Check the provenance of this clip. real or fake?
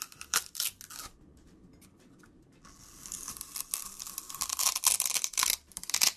real